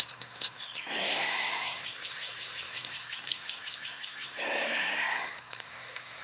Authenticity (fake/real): fake